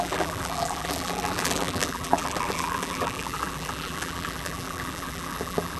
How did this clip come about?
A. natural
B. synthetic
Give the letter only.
B